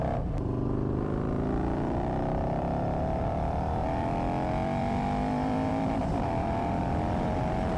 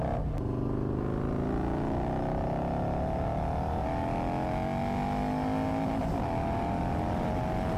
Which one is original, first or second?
second